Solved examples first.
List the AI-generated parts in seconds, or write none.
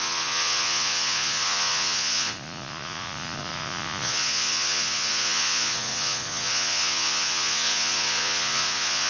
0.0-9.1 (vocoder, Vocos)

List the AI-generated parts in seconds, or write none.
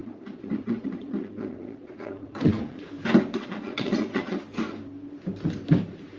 0.0-2.9 (vocoder, Vocos); 3.3-4.4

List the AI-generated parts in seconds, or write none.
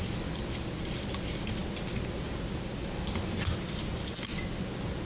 none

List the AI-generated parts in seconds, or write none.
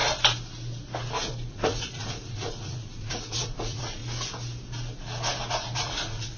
1.5-4.0 (vocoder, Vocos); 5.5-6.4